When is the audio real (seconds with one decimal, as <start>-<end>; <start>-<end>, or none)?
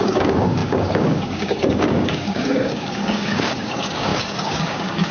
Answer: none